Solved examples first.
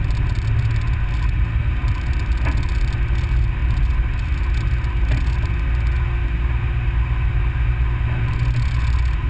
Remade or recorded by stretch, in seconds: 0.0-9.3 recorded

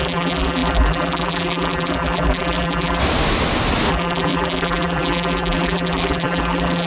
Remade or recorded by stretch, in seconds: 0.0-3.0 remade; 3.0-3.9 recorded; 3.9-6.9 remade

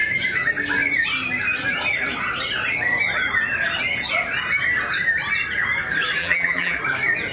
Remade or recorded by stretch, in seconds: 0.0-6.2 recorded; 6.2-6.8 remade; 6.8-7.3 recorded

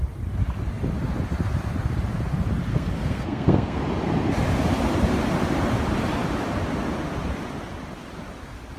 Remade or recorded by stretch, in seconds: 0.0-2.7 recorded; 2.7-3.8 remade; 3.8-8.8 recorded